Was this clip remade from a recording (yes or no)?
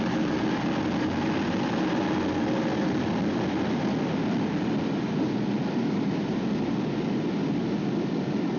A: no